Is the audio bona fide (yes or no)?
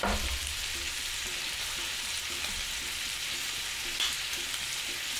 no